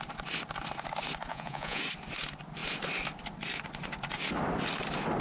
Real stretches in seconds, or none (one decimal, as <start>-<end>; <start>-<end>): 0.0-1.3; 1.8-5.2